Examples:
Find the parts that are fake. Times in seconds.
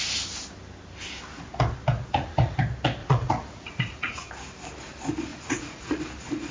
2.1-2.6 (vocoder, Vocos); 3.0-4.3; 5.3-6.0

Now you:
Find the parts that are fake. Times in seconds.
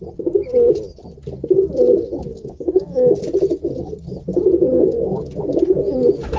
2.3-3.2 (autoencoder, DAC-VAE)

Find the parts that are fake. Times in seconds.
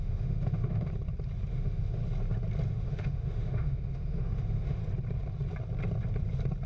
0.0-0.9 (autoencoder, DAC-VAE); 1.5-2.0; 2.7-4.8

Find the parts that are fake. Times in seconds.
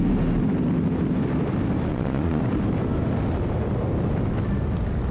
1.9-2.4 (vocoder, Vocos)